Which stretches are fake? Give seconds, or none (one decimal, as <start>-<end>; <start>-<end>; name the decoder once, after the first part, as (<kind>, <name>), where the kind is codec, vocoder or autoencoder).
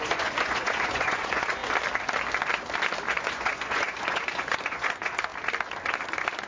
0.0-1.6 (vocoder, Vocos); 3.1-5.3